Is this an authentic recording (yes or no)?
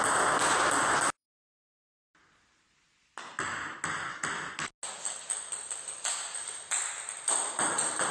yes